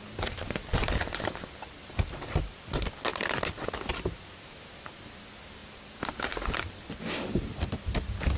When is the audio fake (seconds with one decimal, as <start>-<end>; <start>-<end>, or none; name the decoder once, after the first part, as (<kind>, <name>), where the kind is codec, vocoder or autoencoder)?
0.6-2.9 (vocoder, BigVGAN v2); 5.6-7.0